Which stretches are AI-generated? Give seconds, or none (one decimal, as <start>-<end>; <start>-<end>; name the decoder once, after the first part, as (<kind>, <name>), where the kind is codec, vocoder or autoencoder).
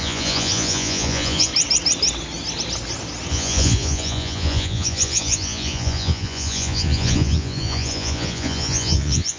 0.0-1.5 (vocoder, Vocos); 3.3-9.4